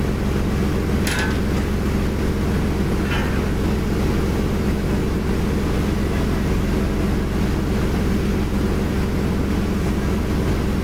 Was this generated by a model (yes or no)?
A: no